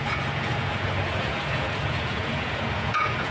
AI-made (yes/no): yes